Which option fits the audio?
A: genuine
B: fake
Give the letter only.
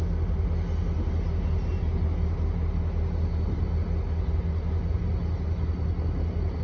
A